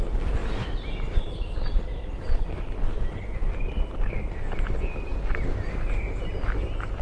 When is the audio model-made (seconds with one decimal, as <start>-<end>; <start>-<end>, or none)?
0.4-4.0